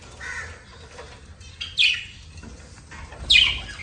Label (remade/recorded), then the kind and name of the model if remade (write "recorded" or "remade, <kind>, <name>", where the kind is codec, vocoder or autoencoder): recorded